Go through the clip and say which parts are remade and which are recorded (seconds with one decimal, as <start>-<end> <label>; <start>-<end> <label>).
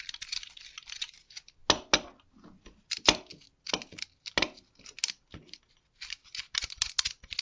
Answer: 0.0-7.4 recorded